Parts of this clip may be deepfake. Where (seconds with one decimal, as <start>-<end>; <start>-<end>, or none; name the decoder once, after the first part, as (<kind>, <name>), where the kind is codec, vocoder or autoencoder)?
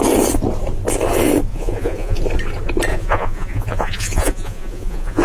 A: 1.5-2.2 (vocoder, Vocos); 2.9-5.2